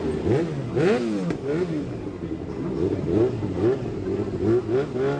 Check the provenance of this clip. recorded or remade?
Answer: recorded